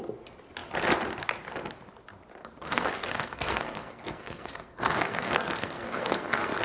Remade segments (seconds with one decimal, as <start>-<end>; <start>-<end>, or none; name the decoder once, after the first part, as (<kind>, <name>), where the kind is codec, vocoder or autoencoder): 2.4-6.6 (codec, SNAC)